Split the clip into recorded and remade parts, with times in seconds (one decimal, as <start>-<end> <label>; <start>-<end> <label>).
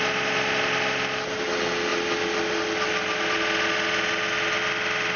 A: 0.0-5.2 recorded